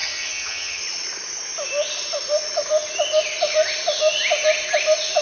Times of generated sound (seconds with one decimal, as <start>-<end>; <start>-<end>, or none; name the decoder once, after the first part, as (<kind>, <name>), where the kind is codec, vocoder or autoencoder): 0.0-0.8 (vocoder, HiFi-GAN)